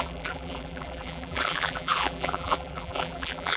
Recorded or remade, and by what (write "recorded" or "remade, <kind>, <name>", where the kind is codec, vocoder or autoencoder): remade, vocoder, BigVGAN v2